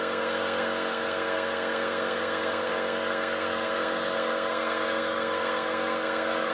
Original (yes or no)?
no